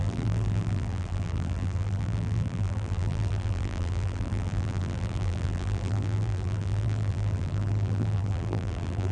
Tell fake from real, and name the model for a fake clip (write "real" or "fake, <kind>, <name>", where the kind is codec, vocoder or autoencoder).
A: fake, vocoder, BigVGAN v2